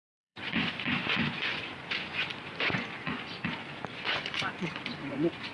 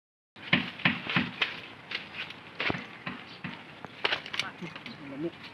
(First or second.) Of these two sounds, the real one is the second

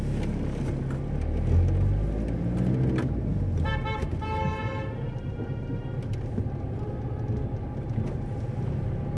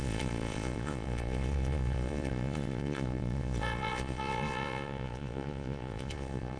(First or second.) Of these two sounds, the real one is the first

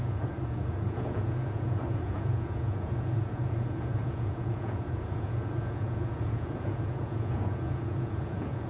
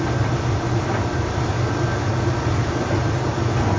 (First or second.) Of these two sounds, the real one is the second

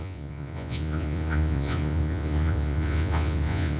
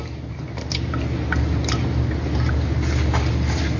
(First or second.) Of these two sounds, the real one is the second